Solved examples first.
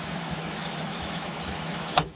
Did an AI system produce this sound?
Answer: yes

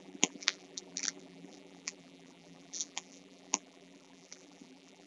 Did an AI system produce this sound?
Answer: yes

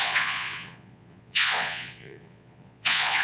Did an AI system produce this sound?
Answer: yes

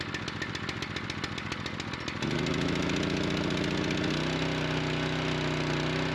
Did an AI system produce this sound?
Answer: no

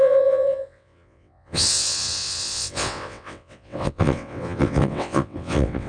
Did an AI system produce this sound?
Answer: yes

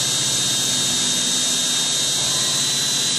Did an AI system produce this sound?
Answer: no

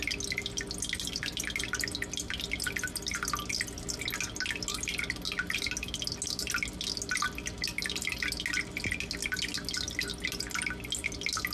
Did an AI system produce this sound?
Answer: no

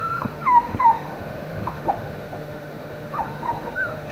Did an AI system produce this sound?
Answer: yes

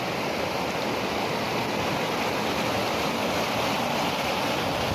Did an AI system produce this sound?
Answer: no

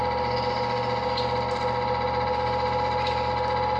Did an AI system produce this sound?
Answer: no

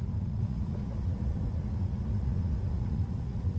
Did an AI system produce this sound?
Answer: yes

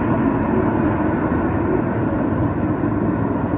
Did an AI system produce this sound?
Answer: no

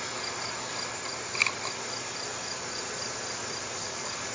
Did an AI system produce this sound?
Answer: no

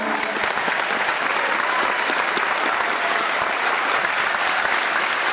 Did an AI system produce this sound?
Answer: no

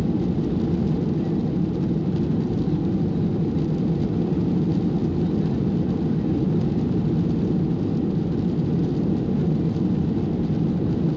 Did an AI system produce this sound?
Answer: no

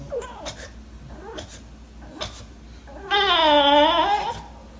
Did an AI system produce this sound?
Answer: no